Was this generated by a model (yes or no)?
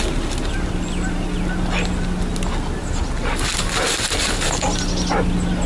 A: no